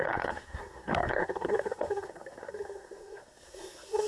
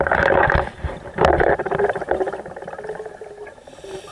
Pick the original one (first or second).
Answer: second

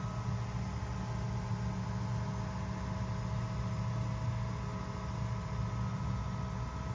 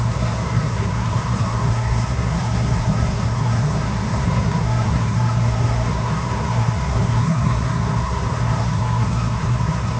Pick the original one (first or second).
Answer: first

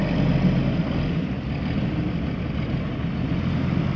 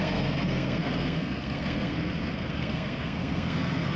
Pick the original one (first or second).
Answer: first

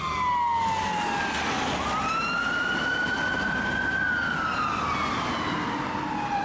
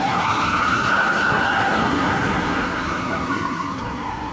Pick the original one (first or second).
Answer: first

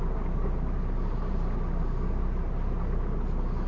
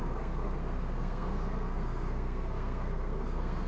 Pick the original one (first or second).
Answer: first